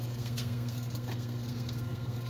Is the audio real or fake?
fake